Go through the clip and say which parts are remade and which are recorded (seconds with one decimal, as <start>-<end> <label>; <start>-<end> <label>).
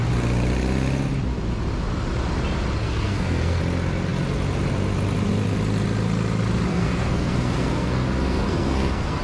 0.0-2.8 recorded; 2.8-3.6 remade; 3.6-6.7 recorded; 6.7-9.2 remade